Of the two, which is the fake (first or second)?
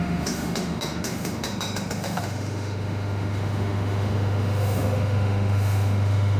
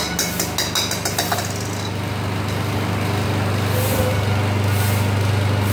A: first